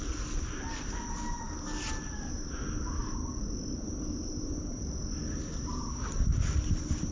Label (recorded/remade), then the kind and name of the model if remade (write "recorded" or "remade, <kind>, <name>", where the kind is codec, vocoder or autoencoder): recorded